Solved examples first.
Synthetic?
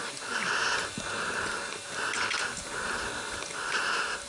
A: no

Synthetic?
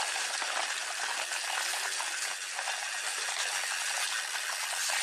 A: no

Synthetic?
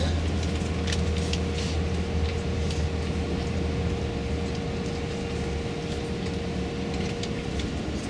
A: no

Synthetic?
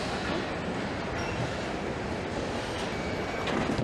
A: no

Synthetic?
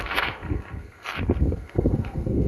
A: yes